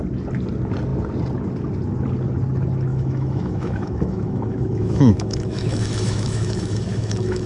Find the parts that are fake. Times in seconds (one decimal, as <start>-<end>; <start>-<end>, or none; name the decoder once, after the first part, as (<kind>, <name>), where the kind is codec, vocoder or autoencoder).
2.9-7.5 (autoencoder, DAC-VAE)